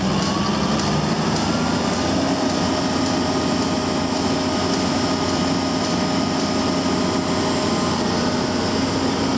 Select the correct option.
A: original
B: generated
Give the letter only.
A